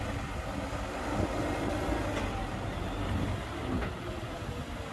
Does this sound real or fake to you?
real